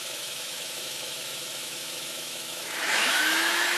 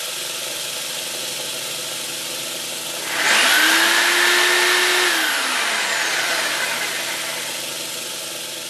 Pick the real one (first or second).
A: second